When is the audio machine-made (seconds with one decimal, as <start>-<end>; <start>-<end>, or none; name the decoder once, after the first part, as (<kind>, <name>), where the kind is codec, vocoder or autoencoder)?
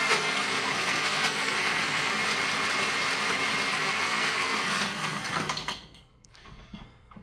0.0-2.2 (codec, SNAC); 3.7-7.2